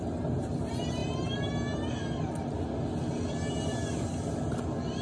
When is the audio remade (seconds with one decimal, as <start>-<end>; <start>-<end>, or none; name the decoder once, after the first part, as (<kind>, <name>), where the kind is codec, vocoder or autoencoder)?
none